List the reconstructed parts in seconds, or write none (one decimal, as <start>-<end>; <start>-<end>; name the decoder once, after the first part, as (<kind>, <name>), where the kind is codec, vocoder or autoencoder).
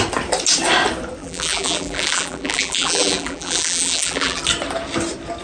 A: 1.2-4.4 (vocoder, BigVGAN v2)